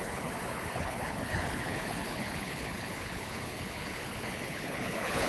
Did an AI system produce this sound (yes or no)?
yes